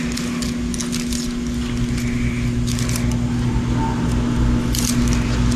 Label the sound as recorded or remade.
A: recorded